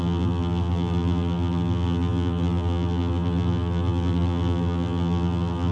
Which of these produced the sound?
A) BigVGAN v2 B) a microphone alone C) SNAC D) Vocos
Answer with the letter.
A